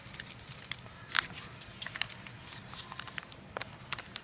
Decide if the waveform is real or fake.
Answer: real